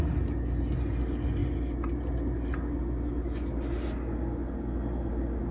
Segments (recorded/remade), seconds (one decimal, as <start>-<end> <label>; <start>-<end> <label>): 0.0-5.5 recorded